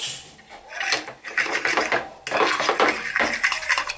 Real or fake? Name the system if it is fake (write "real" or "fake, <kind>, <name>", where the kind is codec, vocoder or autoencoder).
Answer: real